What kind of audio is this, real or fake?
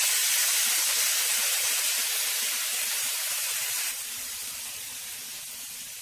fake